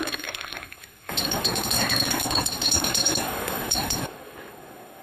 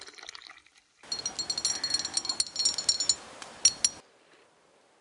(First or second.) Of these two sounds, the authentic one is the second